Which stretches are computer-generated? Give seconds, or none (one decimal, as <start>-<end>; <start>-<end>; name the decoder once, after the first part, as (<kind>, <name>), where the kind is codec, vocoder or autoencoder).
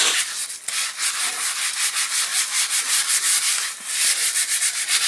none